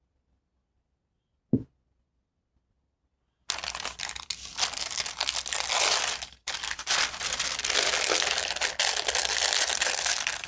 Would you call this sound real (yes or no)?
yes